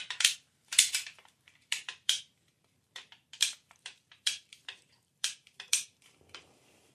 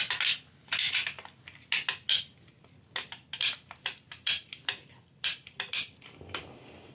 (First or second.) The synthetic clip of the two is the first